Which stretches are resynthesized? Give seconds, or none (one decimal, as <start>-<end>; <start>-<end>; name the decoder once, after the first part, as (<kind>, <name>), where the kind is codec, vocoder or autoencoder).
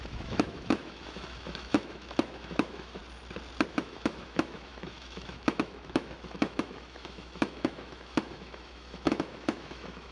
0.0-3.0 (autoencoder, DAC-VAE); 3.7-10.1